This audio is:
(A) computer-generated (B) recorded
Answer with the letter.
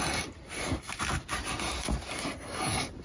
B